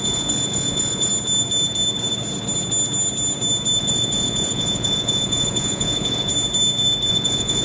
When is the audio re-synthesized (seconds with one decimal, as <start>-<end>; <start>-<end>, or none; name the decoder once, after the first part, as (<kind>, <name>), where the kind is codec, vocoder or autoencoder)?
0.0-1.1 (vocoder, Vocos); 3.8-6.3; 7.1-7.6